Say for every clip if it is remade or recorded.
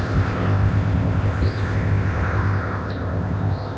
remade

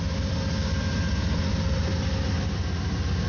recorded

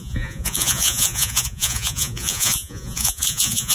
remade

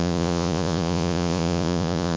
remade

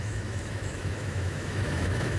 remade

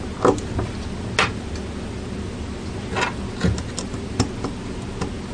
recorded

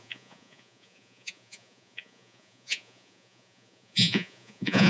remade